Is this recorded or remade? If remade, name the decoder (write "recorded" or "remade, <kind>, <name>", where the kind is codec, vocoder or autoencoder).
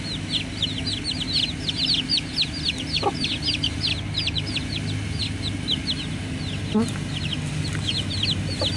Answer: recorded